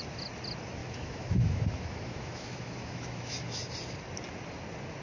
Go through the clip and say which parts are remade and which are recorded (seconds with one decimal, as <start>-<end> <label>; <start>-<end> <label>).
0.0-0.8 recorded; 0.8-3.7 remade; 3.7-5.0 recorded